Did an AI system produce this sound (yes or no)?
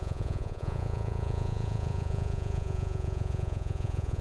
yes